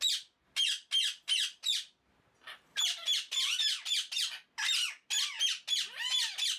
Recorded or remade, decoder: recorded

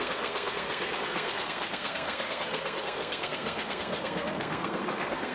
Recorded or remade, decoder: remade, codec, SNAC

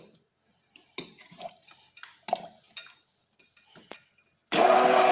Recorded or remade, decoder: recorded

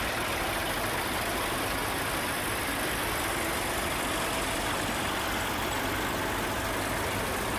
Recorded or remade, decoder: recorded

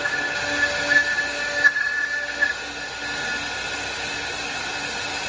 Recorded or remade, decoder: recorded